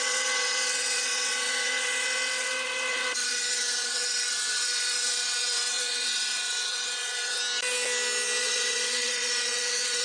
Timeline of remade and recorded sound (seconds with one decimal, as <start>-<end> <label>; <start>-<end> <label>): 0.0-7.4 remade; 7.4-8.4 recorded; 8.4-10.0 remade